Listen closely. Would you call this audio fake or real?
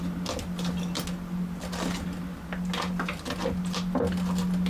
real